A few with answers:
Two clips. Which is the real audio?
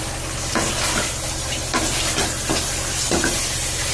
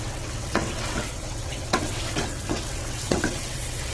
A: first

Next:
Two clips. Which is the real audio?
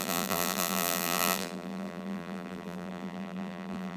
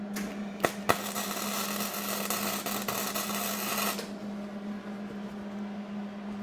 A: second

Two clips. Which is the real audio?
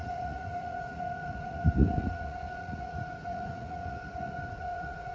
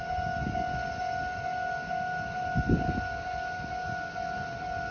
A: second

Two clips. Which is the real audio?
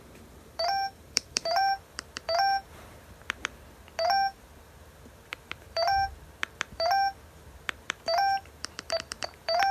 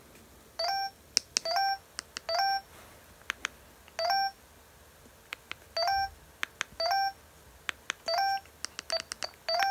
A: second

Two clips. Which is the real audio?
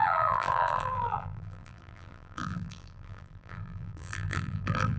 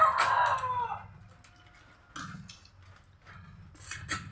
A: second